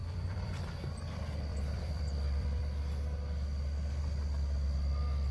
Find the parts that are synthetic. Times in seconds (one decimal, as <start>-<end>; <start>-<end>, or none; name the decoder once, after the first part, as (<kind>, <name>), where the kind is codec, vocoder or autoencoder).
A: 0.0-0.6 (vocoder, BigVGAN v2); 1.5-2.6

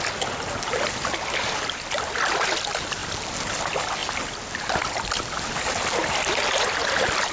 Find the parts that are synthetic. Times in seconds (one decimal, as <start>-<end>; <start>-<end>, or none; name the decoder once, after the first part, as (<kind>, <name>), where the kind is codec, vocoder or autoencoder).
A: none

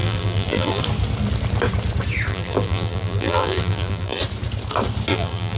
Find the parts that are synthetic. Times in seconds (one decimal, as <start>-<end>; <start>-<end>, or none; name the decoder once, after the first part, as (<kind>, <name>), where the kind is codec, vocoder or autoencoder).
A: 0.0-0.8 (vocoder, BigVGAN v2); 2.3-4.2; 5.1-5.6

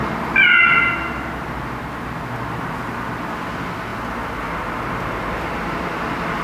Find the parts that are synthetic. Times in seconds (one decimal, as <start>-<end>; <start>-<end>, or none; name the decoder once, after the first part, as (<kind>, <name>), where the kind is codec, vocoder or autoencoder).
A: 0.0-0.5 (vocoder, BigVGAN v2); 2.5-6.4

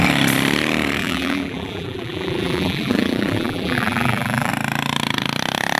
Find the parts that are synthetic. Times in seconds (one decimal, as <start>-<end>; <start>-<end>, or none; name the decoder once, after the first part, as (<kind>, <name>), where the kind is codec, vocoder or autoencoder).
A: 1.0-4.5 (vocoder, BigVGAN v2)

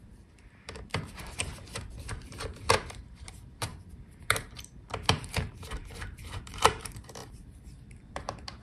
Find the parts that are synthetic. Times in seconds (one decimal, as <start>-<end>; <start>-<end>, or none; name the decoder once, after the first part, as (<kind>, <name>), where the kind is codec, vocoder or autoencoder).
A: 0.0-3.7 (vocoder, BigVGAN v2); 4.2-8.6

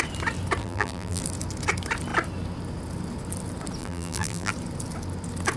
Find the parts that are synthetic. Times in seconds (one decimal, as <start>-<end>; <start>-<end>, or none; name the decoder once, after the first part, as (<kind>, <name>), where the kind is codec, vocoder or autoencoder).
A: 0.6-1.2 (vocoder, BigVGAN v2); 3.8-4.5